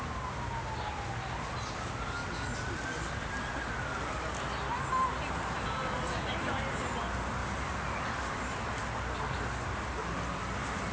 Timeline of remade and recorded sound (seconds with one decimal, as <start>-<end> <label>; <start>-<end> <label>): 0.0-2.2 recorded; 2.2-3.7 remade; 3.7-7.4 recorded; 7.4-10.4 remade; 10.4-10.9 recorded